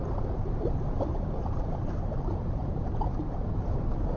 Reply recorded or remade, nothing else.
recorded